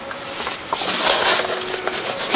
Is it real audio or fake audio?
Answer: real